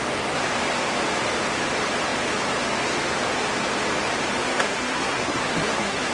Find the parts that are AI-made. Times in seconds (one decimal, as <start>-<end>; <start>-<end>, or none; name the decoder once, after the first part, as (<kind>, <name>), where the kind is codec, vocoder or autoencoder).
4.4-6.1 (codec, SNAC)